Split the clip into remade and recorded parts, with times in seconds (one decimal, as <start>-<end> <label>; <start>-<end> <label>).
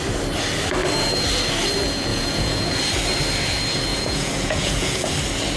0.0-2.1 recorded; 2.1-2.8 remade; 2.8-3.9 recorded; 3.9-5.1 remade; 5.1-5.6 recorded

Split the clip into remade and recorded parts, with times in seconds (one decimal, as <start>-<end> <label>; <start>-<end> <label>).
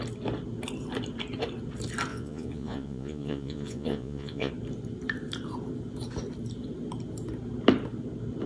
0.0-2.1 recorded; 2.1-4.5 remade; 4.5-8.5 recorded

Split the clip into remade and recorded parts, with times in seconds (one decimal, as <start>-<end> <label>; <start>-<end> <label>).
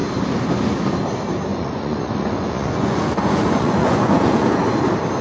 0.0-1.5 recorded; 1.5-4.6 remade; 4.6-5.2 recorded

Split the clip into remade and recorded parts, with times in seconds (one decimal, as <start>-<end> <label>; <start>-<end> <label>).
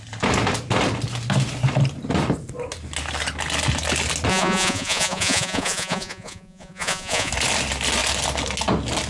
0.0-4.3 recorded; 4.3-7.3 remade; 7.3-9.1 recorded